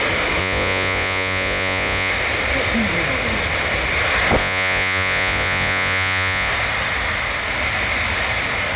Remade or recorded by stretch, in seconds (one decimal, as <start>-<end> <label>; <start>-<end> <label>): 0.0-0.4 recorded; 0.4-2.1 remade; 2.1-4.4 recorded; 4.4-6.5 remade; 6.5-8.8 recorded